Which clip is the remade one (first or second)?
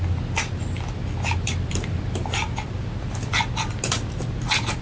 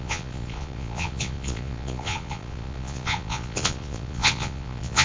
second